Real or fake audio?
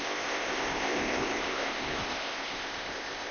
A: fake